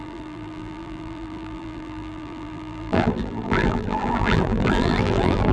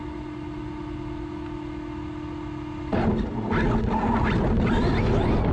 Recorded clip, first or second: second